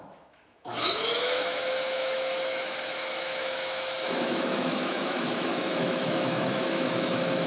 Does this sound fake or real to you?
fake